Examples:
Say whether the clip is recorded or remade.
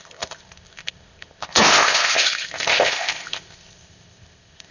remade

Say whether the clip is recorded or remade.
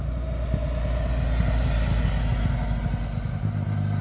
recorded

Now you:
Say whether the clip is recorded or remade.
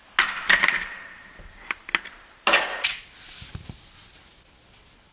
recorded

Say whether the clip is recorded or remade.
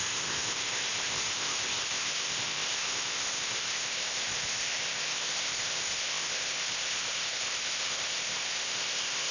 remade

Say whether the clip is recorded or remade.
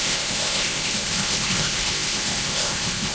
remade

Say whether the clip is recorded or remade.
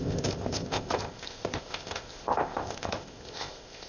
remade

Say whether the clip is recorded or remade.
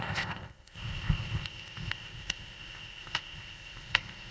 remade